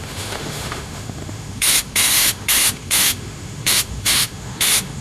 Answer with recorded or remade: remade